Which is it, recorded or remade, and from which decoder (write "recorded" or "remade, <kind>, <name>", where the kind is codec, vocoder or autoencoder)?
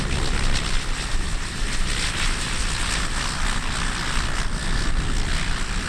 recorded